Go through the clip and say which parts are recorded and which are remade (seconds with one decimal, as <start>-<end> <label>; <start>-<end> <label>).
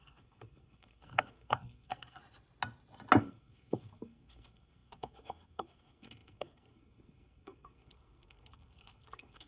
0.0-2.2 remade; 2.2-3.2 recorded; 3.2-9.5 remade